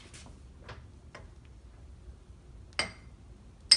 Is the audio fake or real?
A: real